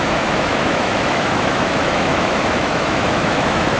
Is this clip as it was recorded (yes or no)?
no